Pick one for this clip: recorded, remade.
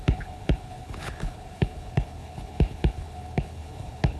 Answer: remade